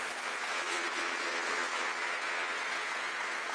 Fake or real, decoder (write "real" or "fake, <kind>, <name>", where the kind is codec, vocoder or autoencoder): fake, vocoder, Vocos